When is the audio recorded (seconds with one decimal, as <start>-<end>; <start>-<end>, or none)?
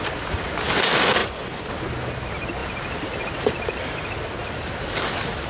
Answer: 0.0-1.2; 1.7-5.5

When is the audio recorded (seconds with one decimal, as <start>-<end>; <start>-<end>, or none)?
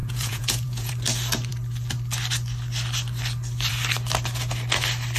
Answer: 0.9-5.2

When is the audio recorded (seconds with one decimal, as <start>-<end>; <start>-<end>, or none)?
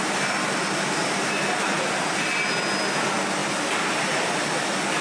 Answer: 0.0-5.0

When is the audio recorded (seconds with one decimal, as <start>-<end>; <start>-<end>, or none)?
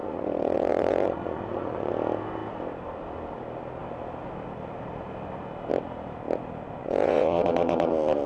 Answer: 1.9-6.8; 7.9-8.3